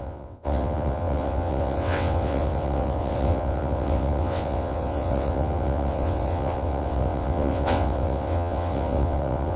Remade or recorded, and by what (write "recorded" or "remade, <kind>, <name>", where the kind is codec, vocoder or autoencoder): remade, vocoder, WaveNeXt